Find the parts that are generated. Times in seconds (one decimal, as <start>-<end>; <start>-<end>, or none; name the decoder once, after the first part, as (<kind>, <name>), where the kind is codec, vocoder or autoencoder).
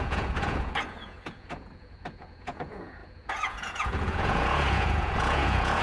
0.0-5.8 (vocoder, Vocos)